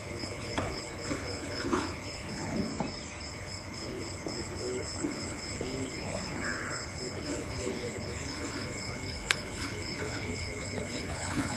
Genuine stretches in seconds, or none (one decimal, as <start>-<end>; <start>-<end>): 2.7-3.3